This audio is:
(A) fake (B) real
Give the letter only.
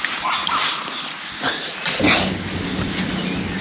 B